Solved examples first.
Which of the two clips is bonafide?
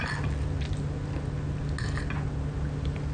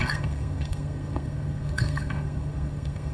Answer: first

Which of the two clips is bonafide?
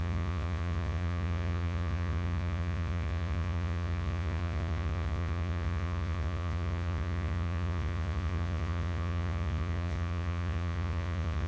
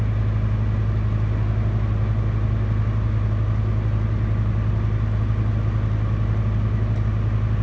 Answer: second